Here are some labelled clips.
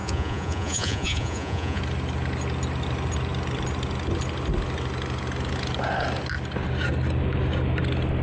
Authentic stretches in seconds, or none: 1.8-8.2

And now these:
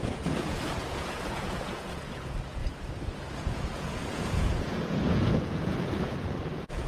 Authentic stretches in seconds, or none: 2.6-3.4

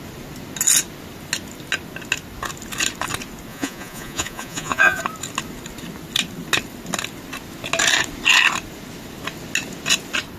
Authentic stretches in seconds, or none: 0.0-3.5; 5.0-10.4

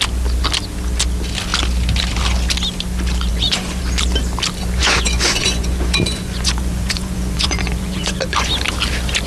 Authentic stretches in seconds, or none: 0.0-3.3; 3.8-4.8; 8.5-9.3